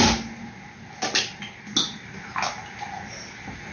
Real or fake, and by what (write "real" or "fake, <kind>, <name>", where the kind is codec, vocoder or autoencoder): real